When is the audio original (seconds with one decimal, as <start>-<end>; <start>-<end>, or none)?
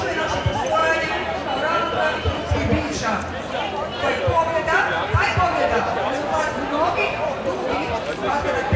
0.0-8.2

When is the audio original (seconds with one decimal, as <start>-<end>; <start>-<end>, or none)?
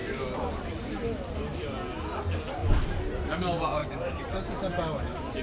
0.9-2.6; 3.3-3.8; 4.3-5.4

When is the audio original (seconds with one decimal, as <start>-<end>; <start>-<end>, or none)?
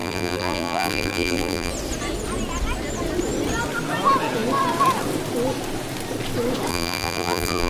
1.7-6.7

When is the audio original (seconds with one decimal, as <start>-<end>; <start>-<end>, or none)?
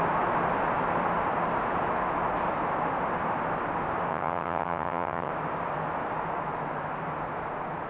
0.0-4.1; 5.3-7.9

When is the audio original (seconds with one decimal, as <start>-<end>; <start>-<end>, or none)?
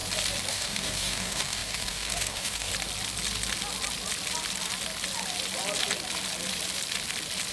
0.0-0.5; 2.7-7.5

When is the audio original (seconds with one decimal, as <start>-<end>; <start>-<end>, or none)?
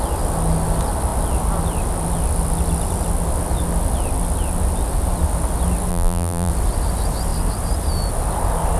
0.0-5.9; 6.5-8.8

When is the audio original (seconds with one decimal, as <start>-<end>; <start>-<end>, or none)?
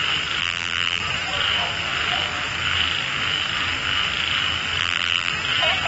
0.0-0.4; 1.0-4.8; 5.3-5.9